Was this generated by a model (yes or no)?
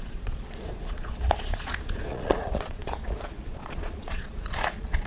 yes